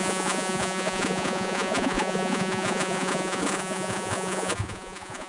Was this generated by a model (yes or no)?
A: yes